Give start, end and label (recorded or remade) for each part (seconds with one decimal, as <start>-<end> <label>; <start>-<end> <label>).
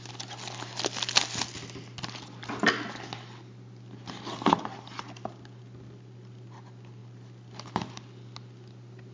0.0-9.1 recorded